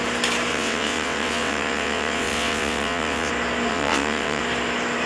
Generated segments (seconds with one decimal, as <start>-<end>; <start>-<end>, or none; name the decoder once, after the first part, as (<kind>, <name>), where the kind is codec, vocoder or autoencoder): 0.5-3.3 (vocoder, WaveNeXt); 3.7-4.4